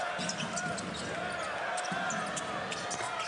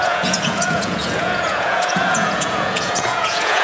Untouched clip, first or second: first